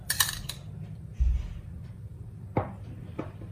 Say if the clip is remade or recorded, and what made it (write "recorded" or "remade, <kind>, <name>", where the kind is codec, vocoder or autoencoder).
remade, vocoder, BigVGAN v2